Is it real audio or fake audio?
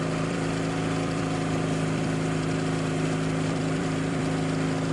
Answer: fake